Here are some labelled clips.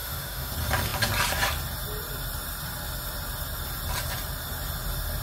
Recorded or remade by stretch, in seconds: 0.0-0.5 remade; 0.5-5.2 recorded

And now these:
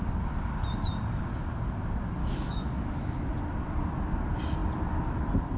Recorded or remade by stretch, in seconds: 0.0-2.2 recorded; 2.2-3.3 remade; 3.3-5.6 recorded

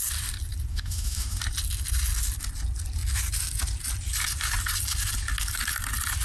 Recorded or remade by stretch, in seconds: 0.0-0.7 recorded; 0.7-1.4 remade; 1.4-6.2 recorded

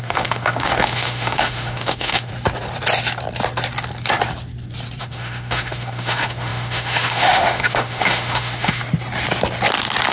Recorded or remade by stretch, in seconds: 0.0-2.3 remade; 2.3-5.0 recorded; 5.0-8.8 remade; 8.8-10.1 recorded

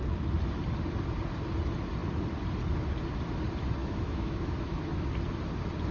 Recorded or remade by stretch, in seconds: 0.0-3.8 recorded; 3.8-5.1 remade; 5.1-5.9 recorded

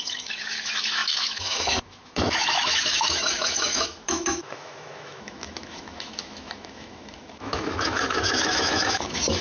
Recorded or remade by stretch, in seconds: 0.0-9.4 remade

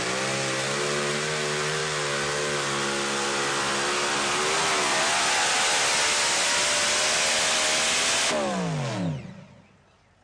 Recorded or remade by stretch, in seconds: 0.0-10.2 recorded

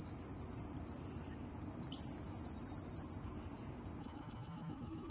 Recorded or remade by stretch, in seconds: 0.0-4.0 recorded; 4.0-5.1 remade